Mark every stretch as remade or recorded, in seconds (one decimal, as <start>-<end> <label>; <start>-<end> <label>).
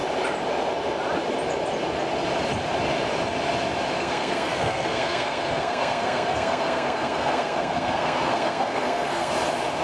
0.0-4.0 recorded; 4.0-9.3 remade; 9.3-9.8 recorded